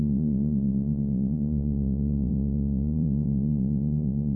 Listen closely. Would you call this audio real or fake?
fake